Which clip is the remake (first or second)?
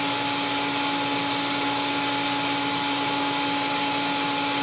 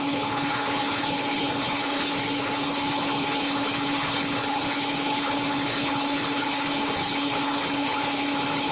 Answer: second